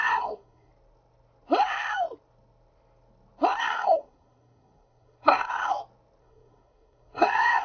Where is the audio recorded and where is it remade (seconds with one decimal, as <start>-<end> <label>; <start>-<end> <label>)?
0.0-0.7 remade; 0.7-3.6 recorded; 3.6-5.6 remade; 5.6-6.2 recorded; 6.2-7.6 remade